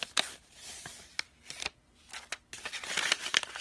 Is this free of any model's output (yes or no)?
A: yes